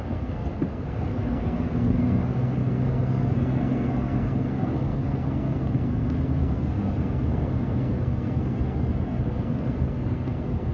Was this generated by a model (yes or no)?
yes